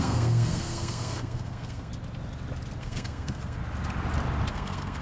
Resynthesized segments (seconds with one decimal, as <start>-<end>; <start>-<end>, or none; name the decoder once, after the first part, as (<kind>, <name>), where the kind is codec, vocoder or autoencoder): 0.0-1.9 (codec, SNAC); 2.8-3.6; 4.5-5.0